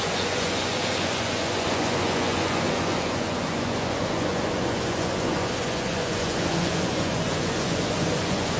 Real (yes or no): no